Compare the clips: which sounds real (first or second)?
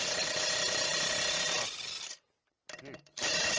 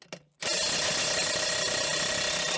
second